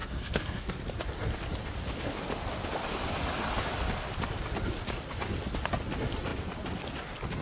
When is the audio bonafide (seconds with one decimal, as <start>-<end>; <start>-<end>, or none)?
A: 0.8-7.4